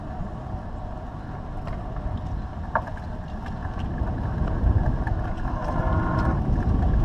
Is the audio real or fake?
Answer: real